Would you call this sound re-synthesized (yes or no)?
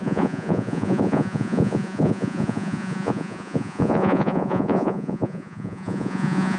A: yes